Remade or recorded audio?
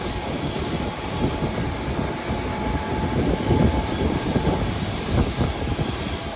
recorded